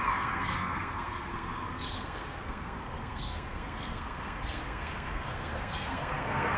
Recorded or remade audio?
remade